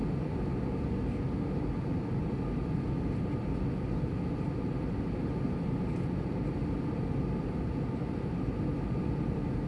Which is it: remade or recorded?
recorded